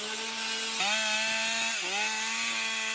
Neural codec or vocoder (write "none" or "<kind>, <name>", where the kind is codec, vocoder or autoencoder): none